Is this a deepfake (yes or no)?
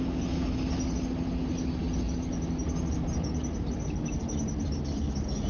no